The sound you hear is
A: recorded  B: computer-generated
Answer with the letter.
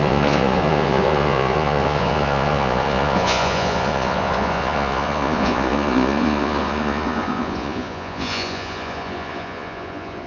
B